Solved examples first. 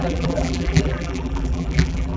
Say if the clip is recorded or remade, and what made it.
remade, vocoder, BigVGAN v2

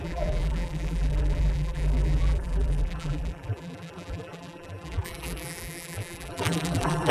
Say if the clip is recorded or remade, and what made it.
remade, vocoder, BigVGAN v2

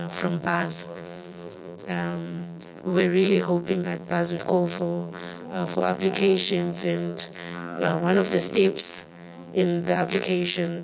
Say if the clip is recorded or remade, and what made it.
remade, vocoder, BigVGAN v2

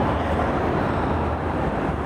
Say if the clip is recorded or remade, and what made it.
remade, vocoder, BigVGAN v2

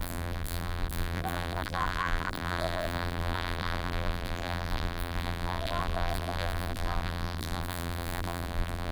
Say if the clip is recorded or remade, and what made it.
remade, vocoder, BigVGAN v2